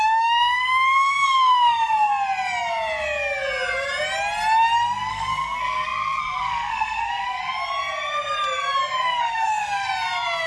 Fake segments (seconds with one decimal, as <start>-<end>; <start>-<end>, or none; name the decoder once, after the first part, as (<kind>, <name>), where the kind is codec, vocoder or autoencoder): 0.0-2.1 (codec, SNAC); 5.1-7.4; 9.2-9.9

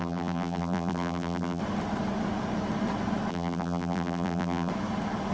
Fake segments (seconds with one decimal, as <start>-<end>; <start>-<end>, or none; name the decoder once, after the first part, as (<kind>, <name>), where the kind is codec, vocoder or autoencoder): 0.0-1.6 (vocoder, BigVGAN v2); 3.3-4.7

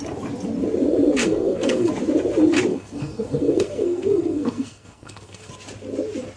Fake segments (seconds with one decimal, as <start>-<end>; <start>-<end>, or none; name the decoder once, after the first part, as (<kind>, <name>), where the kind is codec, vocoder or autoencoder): 1.2-1.9 (codec, SNAC); 2.7-5.5

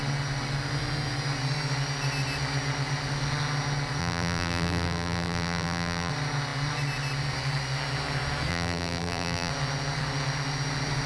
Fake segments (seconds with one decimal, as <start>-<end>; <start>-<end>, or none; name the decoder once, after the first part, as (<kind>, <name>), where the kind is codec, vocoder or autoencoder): 4.0-6.1 (vocoder, BigVGAN v2); 8.5-9.5

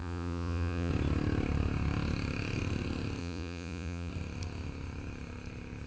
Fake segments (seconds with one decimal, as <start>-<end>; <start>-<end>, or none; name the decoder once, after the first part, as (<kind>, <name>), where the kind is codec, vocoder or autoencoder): 0.0-0.9 (vocoder, Vocos); 3.2-4.1

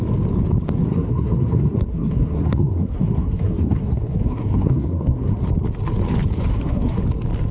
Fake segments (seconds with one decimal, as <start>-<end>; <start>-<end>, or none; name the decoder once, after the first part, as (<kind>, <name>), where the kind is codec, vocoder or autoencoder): 0.9-5.4 (codec, SNAC); 6.5-7.0